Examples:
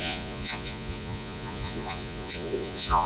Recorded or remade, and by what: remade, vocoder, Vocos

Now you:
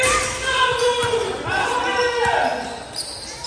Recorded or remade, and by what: recorded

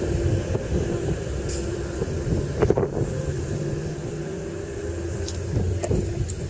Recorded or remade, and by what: recorded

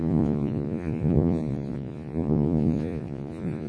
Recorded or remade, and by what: remade, vocoder, Vocos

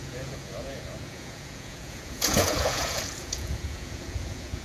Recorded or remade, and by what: remade, vocoder, Vocos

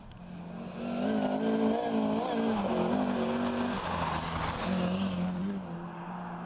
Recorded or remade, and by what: recorded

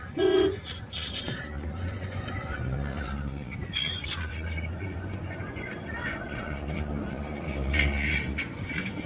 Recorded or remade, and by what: remade, vocoder, Vocos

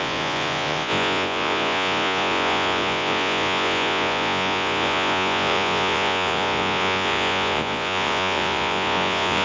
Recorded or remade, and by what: remade, vocoder, Vocos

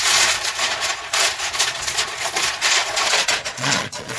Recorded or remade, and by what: remade, vocoder, Vocos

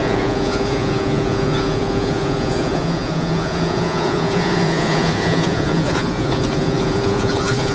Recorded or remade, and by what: remade, vocoder, Vocos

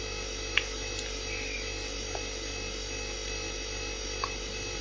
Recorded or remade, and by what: recorded